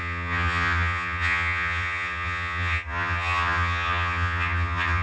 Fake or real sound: fake